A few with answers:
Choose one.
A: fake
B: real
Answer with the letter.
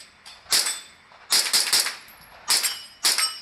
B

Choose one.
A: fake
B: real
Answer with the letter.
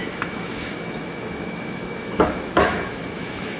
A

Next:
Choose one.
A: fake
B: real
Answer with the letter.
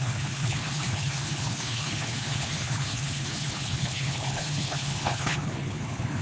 A